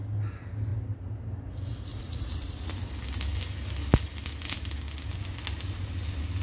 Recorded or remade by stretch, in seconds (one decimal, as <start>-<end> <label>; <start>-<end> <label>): 0.0-1.9 recorded; 1.9-2.7 remade; 2.7-6.4 recorded